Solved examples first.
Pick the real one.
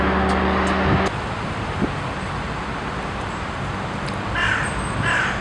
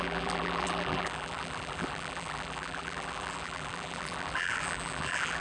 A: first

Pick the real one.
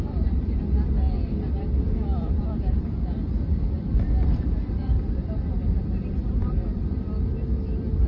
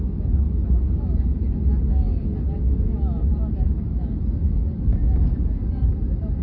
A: second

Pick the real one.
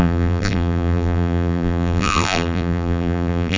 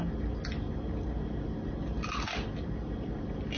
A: second